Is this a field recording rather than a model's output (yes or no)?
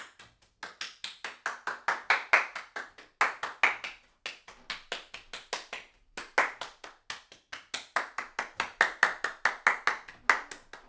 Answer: yes